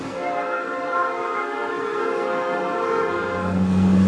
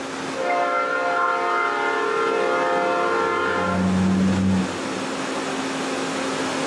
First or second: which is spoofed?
first